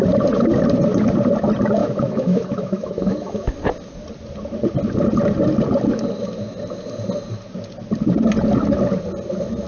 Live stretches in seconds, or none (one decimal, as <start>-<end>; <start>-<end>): 0.0-1.8; 3.5-9.7